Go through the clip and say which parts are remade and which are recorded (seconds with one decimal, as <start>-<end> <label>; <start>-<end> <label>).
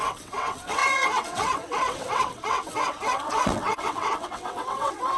0.0-5.2 remade